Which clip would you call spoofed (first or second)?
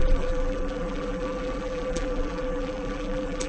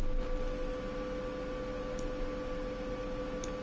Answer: first